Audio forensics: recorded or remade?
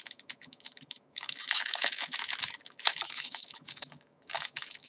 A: remade